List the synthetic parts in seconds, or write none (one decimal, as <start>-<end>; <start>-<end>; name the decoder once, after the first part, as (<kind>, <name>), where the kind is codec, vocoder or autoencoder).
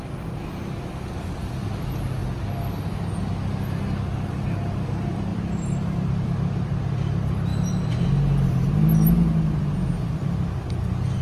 5.3-7.1 (vocoder, BigVGAN v2)